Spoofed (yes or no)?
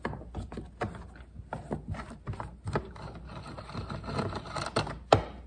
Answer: no